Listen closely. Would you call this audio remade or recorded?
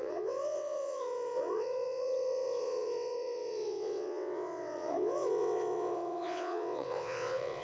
remade